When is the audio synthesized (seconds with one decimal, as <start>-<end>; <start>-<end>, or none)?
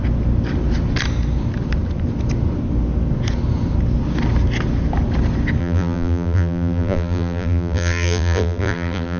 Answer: 5.6-9.2